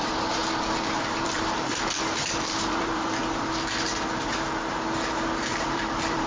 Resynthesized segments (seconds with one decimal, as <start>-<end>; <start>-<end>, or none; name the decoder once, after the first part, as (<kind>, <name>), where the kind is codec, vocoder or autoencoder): 0.0-0.4 (vocoder, BigVGAN v2); 1.2-3.2; 5.4-6.3